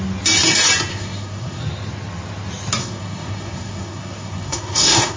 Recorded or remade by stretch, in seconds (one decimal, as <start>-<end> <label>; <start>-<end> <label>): 0.0-0.9 recorded; 0.9-1.6 remade; 1.6-2.8 recorded; 2.8-5.2 remade